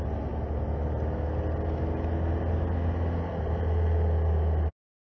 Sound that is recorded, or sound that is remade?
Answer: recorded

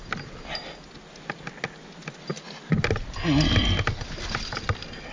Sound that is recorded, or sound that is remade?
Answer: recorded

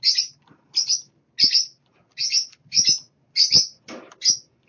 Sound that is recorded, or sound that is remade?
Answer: recorded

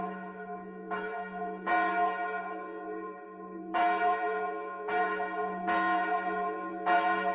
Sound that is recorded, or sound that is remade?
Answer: remade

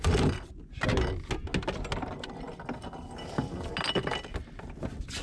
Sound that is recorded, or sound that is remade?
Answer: recorded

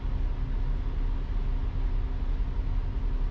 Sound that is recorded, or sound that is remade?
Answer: recorded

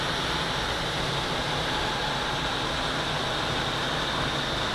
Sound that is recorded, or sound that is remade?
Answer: recorded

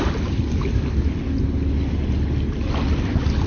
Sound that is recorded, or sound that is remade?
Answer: recorded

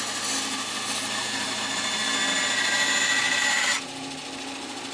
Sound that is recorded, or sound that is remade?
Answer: recorded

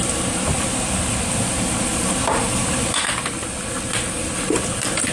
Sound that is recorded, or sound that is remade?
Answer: recorded